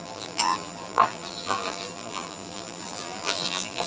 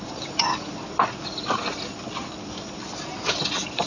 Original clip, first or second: second